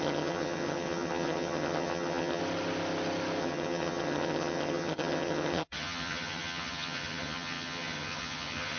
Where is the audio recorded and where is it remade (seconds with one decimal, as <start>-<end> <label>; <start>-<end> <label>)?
0.0-2.4 remade; 2.4-3.4 recorded; 3.4-8.8 remade